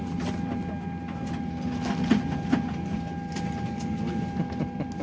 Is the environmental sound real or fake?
real